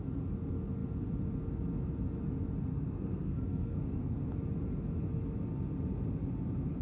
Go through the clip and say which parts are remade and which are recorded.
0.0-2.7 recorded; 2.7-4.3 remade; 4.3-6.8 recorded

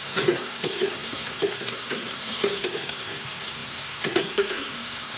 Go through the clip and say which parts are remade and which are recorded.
0.0-5.2 remade

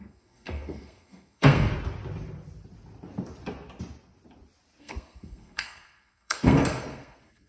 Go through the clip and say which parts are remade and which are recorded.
0.0-1.7 remade; 1.7-4.8 recorded; 4.8-7.5 remade

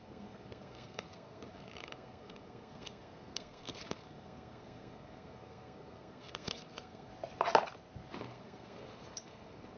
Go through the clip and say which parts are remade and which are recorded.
0.0-7.1 remade; 7.1-8.2 recorded; 8.2-9.8 remade

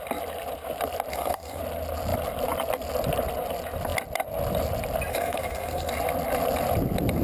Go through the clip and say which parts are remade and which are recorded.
0.0-1.1 recorded; 1.1-1.6 remade; 1.6-5.1 recorded; 5.1-5.9 remade; 5.9-7.2 recorded

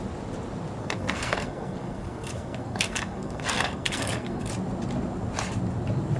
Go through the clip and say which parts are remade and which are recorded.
0.0-0.8 recorded; 0.8-4.5 remade; 4.5-6.2 recorded